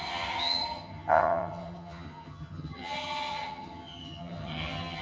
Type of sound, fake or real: fake